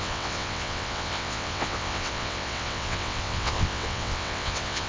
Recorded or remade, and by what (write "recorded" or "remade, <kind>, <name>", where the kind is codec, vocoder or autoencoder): remade, vocoder, WaveNeXt